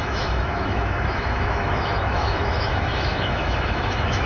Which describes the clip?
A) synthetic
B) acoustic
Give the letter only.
A